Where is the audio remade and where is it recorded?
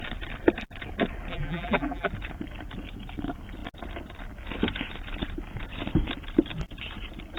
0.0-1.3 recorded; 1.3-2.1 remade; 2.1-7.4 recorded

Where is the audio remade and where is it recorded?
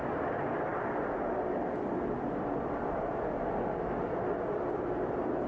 0.0-5.5 recorded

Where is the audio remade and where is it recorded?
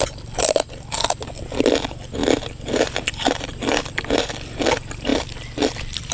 0.0-6.1 recorded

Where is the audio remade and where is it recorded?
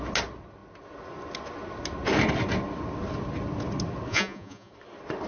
0.0-4.1 recorded; 4.1-4.7 remade; 4.7-5.3 recorded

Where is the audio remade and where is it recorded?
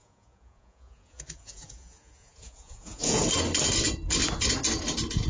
0.0-3.2 remade; 3.2-5.3 recorded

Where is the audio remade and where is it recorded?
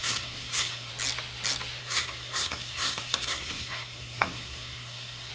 0.0-0.9 remade; 0.9-1.8 recorded; 1.8-5.3 remade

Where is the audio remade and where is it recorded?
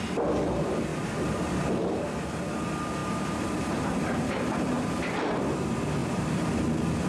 0.0-0.9 recorded; 0.9-2.0 remade; 2.0-3.0 recorded; 3.0-5.0 remade; 5.0-6.0 recorded; 6.0-6.6 remade; 6.6-7.1 recorded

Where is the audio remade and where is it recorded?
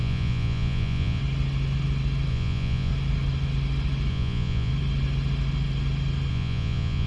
0.0-1.2 remade; 1.2-2.3 recorded; 2.3-2.9 remade; 2.9-4.1 recorded; 4.1-4.7 remade; 4.7-6.3 recorded; 6.3-7.1 remade